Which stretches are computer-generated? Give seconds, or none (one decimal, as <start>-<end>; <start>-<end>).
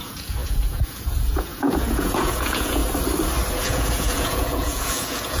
0.0-2.8; 3.5-5.4